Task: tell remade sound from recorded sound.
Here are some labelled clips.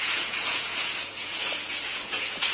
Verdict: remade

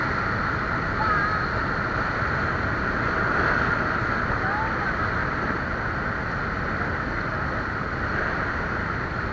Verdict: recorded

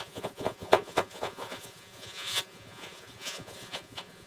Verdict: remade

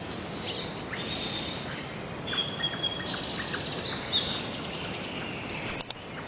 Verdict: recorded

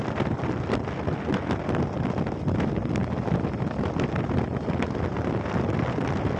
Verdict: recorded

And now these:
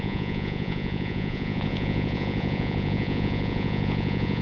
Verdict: remade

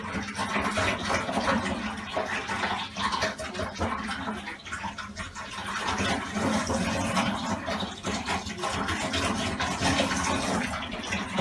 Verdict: recorded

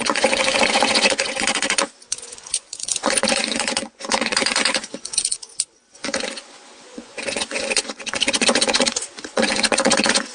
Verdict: remade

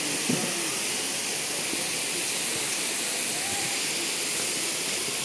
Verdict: recorded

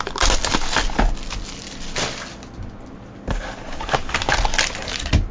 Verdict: recorded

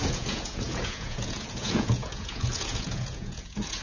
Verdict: remade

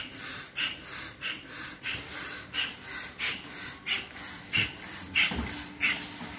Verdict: recorded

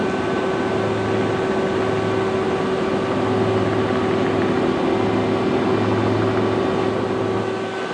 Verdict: recorded